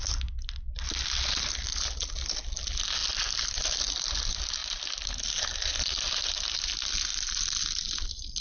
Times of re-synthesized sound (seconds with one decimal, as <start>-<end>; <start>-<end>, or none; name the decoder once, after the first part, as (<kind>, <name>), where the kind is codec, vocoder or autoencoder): 3.0-3.9 (vocoder, BigVGAN v2); 4.6-5.3; 7.1-8.4